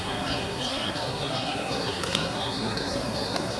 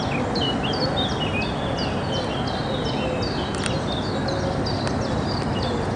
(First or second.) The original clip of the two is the second